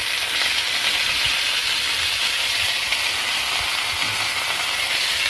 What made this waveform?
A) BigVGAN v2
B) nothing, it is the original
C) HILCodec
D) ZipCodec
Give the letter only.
B